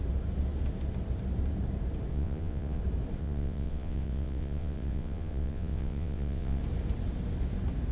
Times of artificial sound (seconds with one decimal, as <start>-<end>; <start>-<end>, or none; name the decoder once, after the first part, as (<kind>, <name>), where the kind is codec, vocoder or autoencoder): 2.1-2.8 (vocoder, WaveNeXt); 3.2-6.6